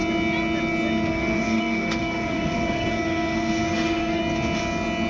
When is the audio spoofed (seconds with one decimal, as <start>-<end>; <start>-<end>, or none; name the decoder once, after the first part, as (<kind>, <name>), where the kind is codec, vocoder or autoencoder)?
1.1-4.2 (codec, SNAC)